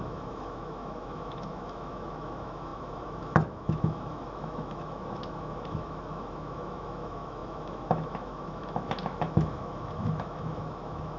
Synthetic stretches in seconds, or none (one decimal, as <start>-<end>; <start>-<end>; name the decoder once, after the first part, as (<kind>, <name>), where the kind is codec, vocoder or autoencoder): 0.0-11.2 (autoencoder, DAC-VAE)